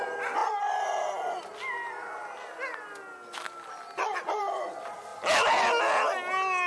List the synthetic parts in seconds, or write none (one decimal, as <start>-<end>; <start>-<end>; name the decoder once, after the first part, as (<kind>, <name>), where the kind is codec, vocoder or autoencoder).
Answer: none